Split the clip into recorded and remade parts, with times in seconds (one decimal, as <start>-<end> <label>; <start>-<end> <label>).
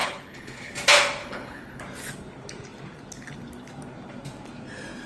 0.0-0.7 remade; 0.7-1.2 recorded; 1.2-1.8 remade; 1.8-5.1 recorded